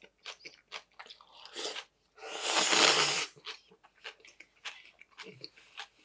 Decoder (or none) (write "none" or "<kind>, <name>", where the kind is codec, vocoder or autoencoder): none